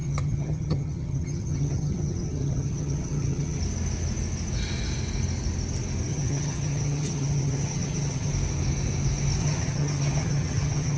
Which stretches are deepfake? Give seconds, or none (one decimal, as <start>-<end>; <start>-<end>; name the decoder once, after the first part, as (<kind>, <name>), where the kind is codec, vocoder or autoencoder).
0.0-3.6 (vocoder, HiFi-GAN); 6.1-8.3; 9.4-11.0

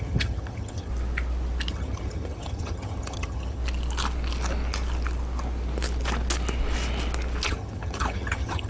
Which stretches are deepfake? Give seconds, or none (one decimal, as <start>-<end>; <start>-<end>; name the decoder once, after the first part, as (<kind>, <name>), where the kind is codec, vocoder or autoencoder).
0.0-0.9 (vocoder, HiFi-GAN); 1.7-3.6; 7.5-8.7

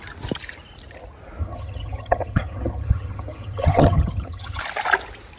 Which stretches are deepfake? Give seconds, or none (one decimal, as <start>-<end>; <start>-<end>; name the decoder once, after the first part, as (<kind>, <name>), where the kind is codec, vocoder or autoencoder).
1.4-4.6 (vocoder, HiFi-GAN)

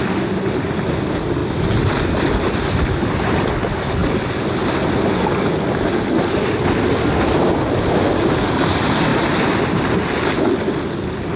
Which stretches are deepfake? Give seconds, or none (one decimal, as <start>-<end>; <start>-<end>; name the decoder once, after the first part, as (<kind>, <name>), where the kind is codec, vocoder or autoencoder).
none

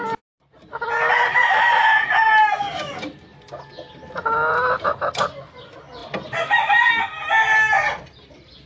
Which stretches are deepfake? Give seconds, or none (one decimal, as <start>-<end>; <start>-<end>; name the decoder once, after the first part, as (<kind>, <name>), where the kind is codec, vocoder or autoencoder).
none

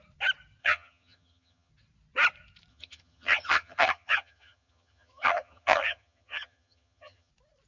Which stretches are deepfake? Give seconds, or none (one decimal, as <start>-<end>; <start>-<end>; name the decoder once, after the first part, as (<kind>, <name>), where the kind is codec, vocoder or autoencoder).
0.6-1.7 (vocoder, HiFi-GAN); 2.7-7.3

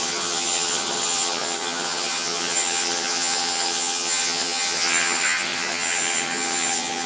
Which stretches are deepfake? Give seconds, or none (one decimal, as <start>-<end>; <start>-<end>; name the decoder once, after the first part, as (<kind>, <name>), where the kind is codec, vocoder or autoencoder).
0.0-7.1 (vocoder, HiFi-GAN)